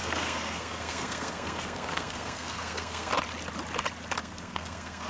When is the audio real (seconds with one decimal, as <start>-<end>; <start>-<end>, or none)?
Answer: 3.1-4.2